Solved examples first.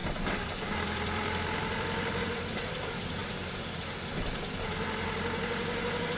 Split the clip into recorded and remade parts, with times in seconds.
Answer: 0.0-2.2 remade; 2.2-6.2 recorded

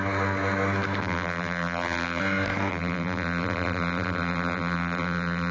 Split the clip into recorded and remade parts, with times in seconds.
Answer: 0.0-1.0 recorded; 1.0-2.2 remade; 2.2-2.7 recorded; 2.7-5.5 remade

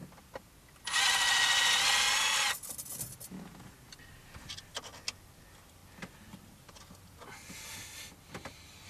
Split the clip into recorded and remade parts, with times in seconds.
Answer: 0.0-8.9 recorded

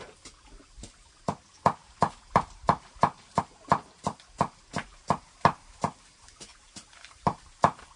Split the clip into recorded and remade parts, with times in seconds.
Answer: 0.0-1.8 recorded; 1.8-3.4 remade; 3.4-6.5 recorded; 6.5-7.4 remade; 7.4-8.0 recorded